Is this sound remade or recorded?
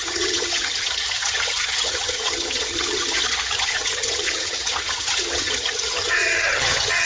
remade